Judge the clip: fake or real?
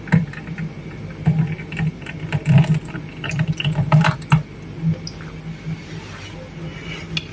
real